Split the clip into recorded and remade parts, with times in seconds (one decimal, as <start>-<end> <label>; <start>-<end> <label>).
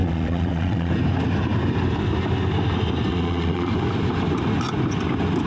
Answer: 0.0-0.9 remade; 0.9-3.1 recorded; 3.1-3.7 remade; 3.7-5.5 recorded